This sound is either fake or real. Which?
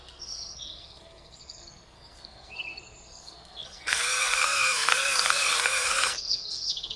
fake